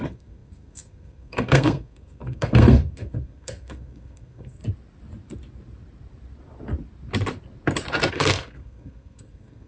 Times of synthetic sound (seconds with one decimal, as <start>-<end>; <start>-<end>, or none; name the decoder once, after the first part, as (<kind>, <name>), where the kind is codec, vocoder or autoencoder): 0.0-4.6 (codec, SNAC); 8.1-9.7